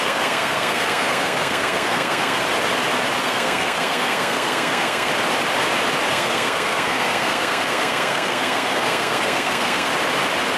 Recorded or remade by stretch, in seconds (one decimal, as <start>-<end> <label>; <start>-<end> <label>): 0.0-2.4 remade; 2.4-3.2 recorded; 3.2-5.1 remade; 5.1-6.1 recorded; 6.1-9.9 remade; 9.9-10.6 recorded